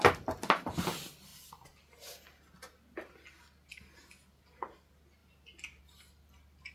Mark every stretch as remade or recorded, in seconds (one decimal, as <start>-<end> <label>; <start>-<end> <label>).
0.0-6.7 recorded